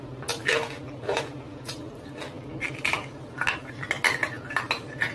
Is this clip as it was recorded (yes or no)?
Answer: yes